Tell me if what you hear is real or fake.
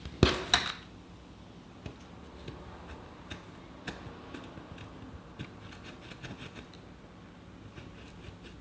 real